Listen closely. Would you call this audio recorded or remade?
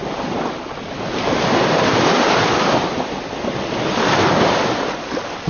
recorded